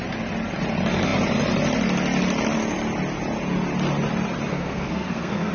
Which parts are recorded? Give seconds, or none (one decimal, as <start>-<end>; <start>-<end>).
0.0-4.5